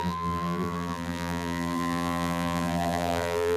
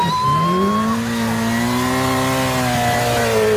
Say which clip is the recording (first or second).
second